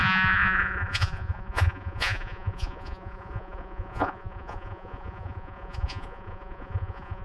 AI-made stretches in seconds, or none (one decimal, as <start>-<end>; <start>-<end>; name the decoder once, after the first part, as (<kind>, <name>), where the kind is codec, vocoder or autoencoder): 0.0-7.2 (vocoder, Vocos)

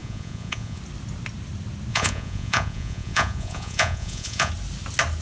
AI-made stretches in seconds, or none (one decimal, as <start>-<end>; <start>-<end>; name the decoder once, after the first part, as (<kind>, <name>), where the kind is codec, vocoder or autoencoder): 0.0-0.8 (vocoder, Vocos); 1.9-4.5

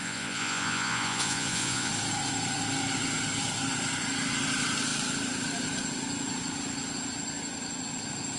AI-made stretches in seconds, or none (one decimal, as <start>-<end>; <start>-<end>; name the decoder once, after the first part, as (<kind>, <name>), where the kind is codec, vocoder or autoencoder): 0.0-1.9 (vocoder, Vocos)

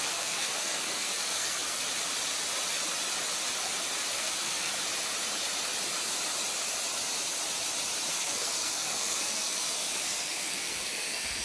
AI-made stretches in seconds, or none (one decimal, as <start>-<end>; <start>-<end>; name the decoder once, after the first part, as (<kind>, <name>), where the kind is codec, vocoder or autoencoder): 0.0-1.8 (codec, SNAC); 4.2-4.7; 8.1-11.4